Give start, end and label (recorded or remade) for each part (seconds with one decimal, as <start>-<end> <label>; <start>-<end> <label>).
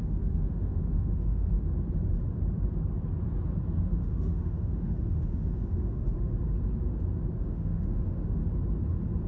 0.0-1.5 remade; 1.5-3.8 recorded; 3.8-6.3 remade; 6.3-7.4 recorded; 7.4-8.4 remade; 8.4-9.3 recorded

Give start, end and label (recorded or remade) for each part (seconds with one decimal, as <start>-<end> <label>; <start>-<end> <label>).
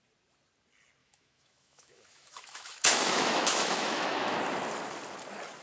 0.0-1.0 recorded; 1.0-4.4 remade; 4.4-5.6 recorded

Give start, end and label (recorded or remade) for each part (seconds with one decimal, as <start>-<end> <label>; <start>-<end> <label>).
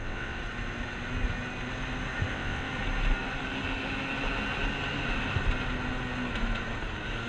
0.0-0.4 remade; 0.4-2.3 recorded; 2.3-2.7 remade; 2.7-7.3 recorded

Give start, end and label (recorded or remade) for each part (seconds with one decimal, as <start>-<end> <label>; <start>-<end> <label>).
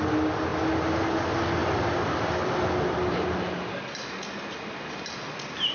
0.0-1.6 recorded; 1.6-3.8 remade; 3.8-5.7 recorded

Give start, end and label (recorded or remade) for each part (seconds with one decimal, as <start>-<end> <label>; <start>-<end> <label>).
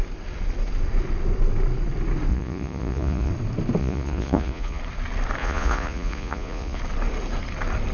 0.0-2.3 recorded; 2.3-3.3 remade; 3.3-3.8 recorded; 3.8-4.8 remade; 4.8-5.4 recorded; 5.4-6.8 remade; 6.8-7.9 recorded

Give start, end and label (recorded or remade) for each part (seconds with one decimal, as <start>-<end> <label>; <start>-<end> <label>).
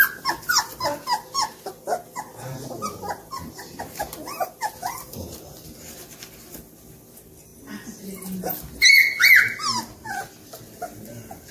0.0-11.5 recorded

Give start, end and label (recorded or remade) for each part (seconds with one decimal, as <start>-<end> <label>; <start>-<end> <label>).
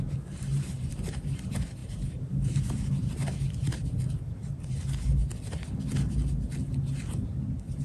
0.0-5.2 remade; 5.2-7.8 recorded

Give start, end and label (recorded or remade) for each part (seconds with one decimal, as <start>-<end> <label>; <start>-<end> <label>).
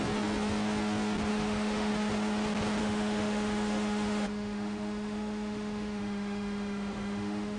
0.0-1.3 recorded; 1.3-1.9 remade; 1.9-2.8 recorded; 2.8-7.6 remade